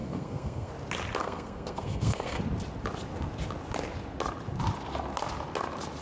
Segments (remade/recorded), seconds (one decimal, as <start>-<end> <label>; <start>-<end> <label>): 0.0-0.7 remade; 0.7-1.2 recorded; 1.2-2.4 remade; 2.4-6.0 recorded